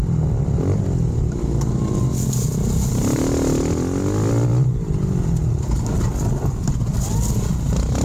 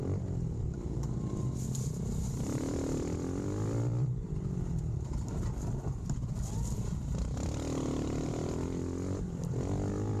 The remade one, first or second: second